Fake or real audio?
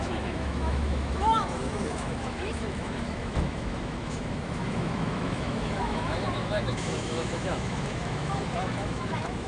fake